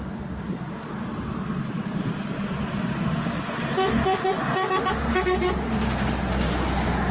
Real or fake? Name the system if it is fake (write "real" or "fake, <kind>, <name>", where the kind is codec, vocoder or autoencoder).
real